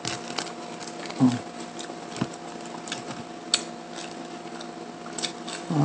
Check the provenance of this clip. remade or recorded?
recorded